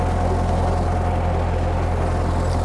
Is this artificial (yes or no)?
no